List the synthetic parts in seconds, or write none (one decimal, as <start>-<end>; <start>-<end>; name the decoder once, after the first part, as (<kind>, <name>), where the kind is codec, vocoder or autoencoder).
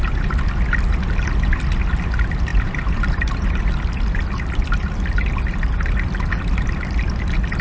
2.5-3.7 (vocoder, BigVGAN v2)